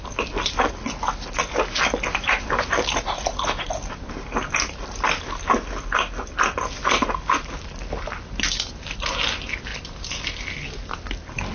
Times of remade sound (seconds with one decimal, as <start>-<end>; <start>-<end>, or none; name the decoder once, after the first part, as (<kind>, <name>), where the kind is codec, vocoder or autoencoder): none